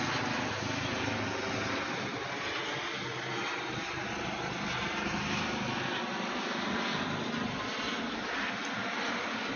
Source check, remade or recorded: recorded